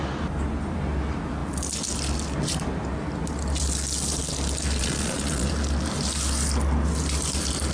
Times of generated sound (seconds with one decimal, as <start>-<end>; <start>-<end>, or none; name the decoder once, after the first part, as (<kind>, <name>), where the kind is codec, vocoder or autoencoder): 4.8-5.5 (vocoder, Vocos)